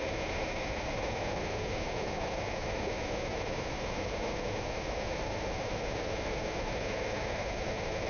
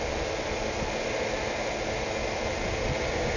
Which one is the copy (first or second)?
first